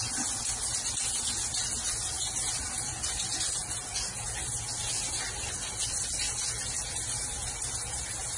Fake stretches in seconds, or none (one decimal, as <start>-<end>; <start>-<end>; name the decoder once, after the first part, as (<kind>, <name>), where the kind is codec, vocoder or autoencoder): none